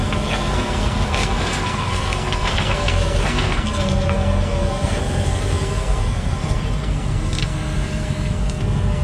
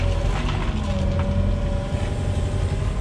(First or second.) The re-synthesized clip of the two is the first